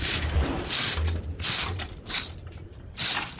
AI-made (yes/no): no